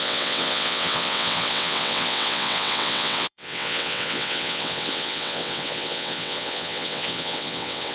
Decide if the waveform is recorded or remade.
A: remade